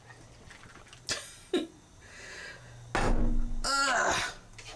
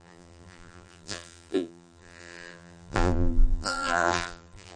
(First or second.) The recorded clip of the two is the first